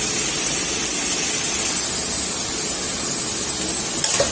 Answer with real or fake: real